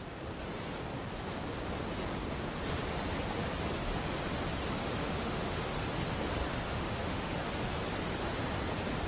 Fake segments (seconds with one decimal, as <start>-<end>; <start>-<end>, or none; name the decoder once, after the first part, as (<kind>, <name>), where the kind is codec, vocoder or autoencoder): 5.0-5.6 (autoencoder, DAC-VAE); 6.5-7.5